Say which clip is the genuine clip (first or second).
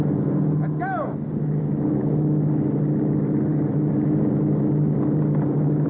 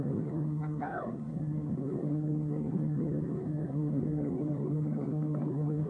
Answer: first